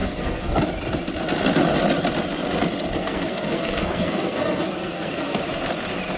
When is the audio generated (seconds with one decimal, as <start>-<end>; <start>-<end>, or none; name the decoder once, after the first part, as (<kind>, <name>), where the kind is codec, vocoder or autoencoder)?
0.0-0.6 (codec, SNAC); 3.0-5.4